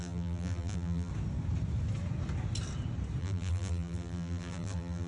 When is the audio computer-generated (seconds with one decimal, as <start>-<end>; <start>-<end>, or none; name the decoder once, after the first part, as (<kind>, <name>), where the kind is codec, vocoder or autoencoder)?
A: 0.0-1.1 (vocoder, BigVGAN v2); 3.2-5.1